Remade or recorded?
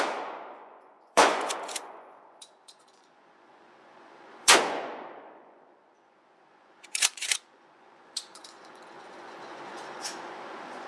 remade